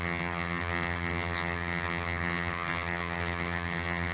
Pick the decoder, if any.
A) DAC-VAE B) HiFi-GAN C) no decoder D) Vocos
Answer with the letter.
B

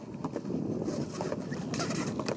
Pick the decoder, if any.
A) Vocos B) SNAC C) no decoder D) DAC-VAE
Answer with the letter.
C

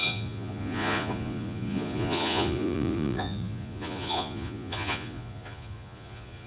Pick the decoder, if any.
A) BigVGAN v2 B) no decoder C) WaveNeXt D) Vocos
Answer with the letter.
D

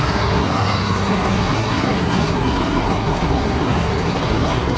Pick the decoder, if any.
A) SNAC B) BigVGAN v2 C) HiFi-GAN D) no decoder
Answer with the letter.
A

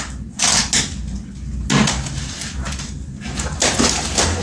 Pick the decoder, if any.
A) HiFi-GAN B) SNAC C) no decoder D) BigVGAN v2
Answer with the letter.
C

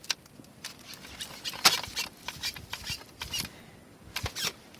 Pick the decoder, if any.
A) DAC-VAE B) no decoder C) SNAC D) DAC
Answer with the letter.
B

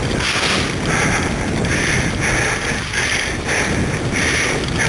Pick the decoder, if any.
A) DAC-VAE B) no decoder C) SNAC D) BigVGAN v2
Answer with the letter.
B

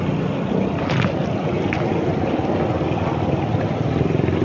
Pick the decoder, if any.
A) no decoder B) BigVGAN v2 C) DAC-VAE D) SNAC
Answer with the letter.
A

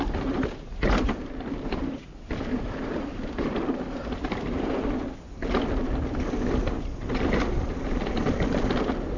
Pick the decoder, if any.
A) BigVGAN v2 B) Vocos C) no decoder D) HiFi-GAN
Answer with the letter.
A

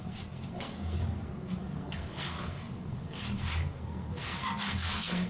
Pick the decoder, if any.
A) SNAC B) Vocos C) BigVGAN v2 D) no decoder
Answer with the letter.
A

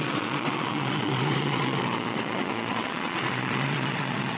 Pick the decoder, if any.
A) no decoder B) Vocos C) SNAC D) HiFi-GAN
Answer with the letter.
B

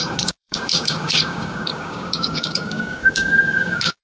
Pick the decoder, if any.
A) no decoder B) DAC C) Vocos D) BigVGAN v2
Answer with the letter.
B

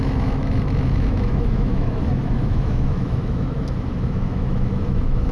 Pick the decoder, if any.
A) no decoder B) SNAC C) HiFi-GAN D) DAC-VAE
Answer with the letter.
D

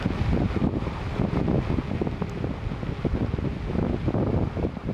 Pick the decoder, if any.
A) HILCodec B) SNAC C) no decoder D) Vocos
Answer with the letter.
C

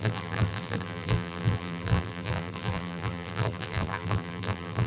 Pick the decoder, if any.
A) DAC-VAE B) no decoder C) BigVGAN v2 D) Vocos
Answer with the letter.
C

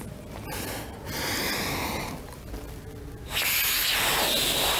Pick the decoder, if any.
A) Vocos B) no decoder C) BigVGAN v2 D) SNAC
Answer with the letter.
B